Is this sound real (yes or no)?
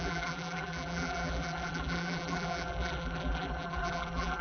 no